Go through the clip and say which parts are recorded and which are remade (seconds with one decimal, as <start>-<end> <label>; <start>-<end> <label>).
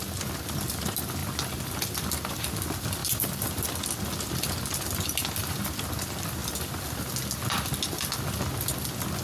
0.0-3.0 recorded; 3.0-3.7 remade; 3.7-9.2 recorded